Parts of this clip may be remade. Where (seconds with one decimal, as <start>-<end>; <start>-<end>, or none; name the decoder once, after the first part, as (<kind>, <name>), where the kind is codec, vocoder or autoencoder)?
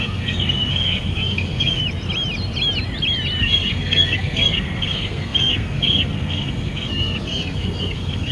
0.0-1.8 (codec, SNAC); 3.4-8.3